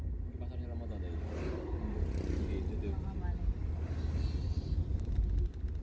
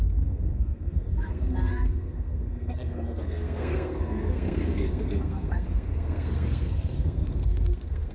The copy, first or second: second